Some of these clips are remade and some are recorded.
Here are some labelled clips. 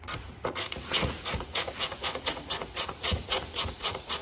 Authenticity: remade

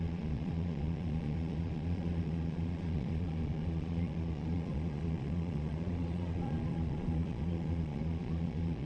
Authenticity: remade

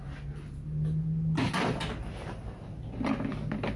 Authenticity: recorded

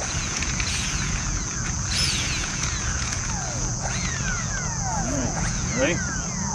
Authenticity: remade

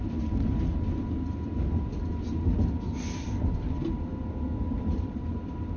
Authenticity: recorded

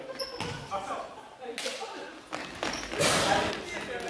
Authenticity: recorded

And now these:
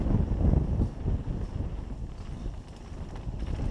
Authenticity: recorded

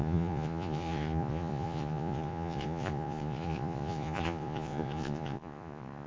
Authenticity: remade